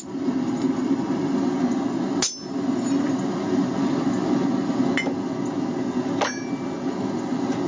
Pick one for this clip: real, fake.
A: real